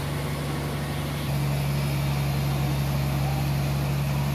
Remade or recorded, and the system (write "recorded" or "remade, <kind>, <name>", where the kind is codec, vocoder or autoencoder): recorded